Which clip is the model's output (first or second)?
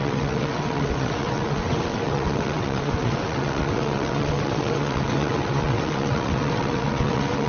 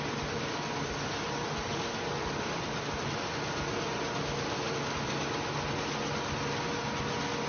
first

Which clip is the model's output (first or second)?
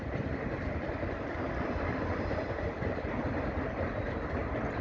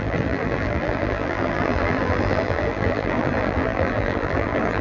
second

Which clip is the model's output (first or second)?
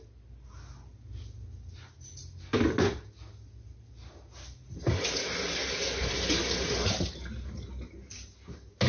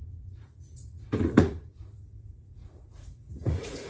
second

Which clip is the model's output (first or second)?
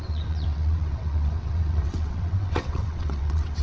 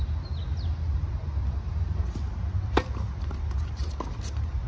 first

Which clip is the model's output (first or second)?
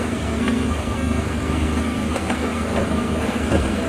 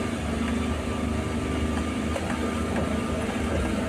first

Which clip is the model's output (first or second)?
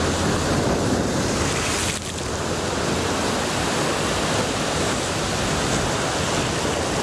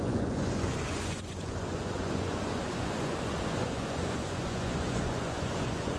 second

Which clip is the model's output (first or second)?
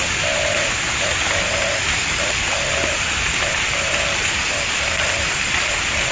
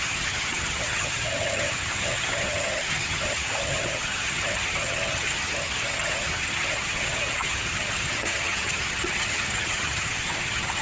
second